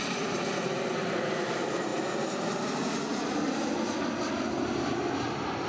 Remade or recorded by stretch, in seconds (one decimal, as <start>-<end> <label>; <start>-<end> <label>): 0.0-5.7 recorded